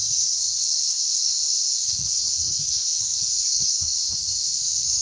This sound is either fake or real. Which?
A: fake